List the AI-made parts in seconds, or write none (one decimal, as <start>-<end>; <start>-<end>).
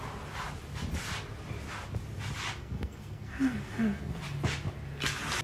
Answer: 2.6-4.2